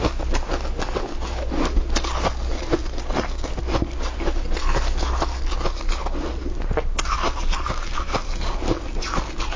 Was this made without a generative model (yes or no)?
yes